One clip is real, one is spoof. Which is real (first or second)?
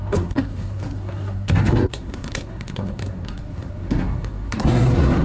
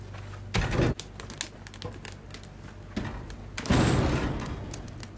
second